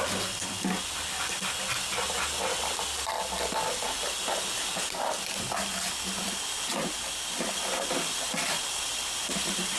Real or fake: fake